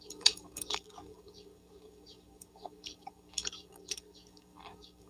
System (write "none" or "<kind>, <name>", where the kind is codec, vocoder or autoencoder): codec, DAC